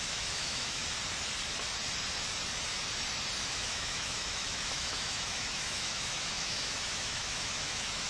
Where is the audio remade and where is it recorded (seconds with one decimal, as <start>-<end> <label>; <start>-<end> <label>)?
0.0-0.8 remade; 0.8-3.5 recorded; 3.5-8.1 remade